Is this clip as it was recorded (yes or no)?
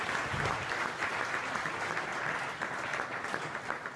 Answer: yes